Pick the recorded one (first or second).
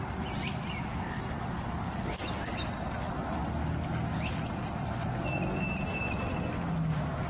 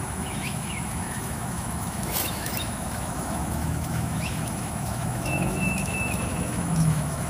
first